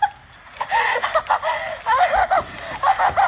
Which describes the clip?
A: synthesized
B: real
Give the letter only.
B